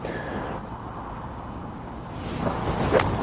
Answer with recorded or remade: recorded